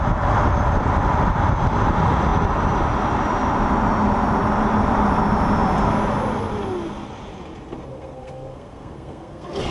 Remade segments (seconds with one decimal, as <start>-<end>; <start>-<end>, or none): 7.9-9.7